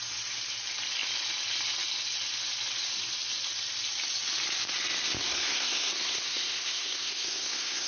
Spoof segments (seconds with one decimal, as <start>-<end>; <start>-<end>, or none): 5.2-7.9